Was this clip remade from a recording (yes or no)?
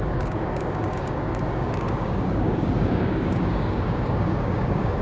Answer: yes